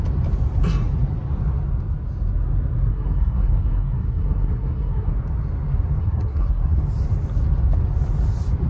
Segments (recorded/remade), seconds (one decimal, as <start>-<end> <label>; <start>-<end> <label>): 0.0-2.9 recorded; 2.9-5.1 remade; 5.1-6.0 recorded; 6.0-6.8 remade; 6.8-8.7 recorded